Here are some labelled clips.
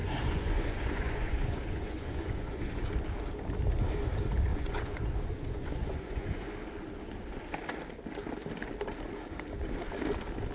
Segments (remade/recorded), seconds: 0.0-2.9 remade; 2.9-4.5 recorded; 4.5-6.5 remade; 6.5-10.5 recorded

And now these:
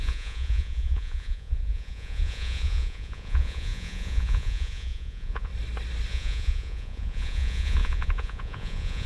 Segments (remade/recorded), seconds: 0.0-5.5 remade; 5.5-6.1 recorded; 6.1-9.1 remade